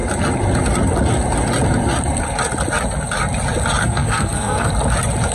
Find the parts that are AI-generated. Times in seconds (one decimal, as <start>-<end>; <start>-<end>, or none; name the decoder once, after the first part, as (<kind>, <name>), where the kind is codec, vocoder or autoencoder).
3.8-4.7 (codec, SNAC)